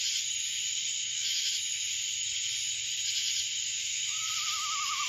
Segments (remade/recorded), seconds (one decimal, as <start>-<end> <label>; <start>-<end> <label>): 0.0-1.0 recorded; 1.0-1.5 remade; 1.5-3.7 recorded; 3.7-4.3 remade; 4.3-5.1 recorded